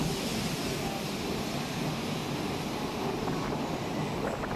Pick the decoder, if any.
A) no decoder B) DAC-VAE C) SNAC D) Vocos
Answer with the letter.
A